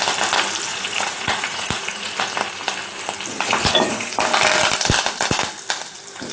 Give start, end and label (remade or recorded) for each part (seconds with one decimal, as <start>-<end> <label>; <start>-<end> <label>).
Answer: 0.0-0.7 recorded; 0.7-2.2 remade; 2.2-3.3 recorded; 3.3-4.2 remade; 4.2-6.3 recorded